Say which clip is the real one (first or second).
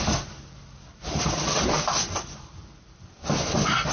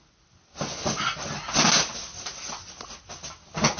second